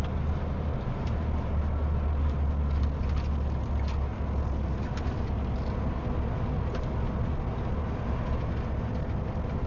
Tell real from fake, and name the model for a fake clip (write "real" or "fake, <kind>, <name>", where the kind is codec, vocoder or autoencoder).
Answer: real